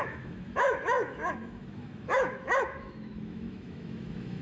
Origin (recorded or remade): remade